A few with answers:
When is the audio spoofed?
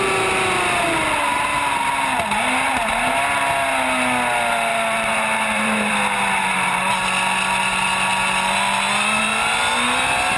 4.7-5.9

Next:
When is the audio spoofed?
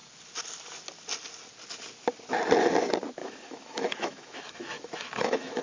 3.2-5.6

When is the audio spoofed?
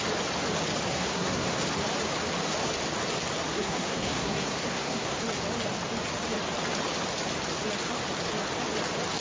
0.9-1.6; 3.5-5.2